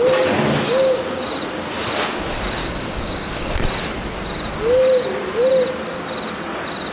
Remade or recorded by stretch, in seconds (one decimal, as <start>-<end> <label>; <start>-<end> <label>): 0.0-2.6 recorded; 2.6-3.6 remade; 3.6-6.9 recorded